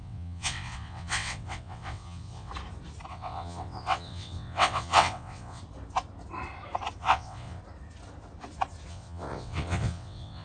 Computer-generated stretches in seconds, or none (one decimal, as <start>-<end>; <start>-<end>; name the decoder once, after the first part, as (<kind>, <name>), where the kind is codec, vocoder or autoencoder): 0.0-2.5 (vocoder, WaveNeXt); 3.1-5.6; 7.0-7.6; 8.9-10.4